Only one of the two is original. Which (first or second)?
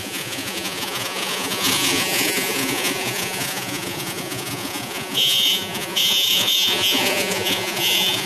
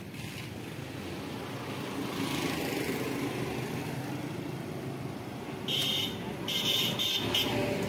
second